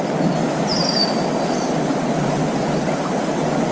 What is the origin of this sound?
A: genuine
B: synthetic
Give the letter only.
A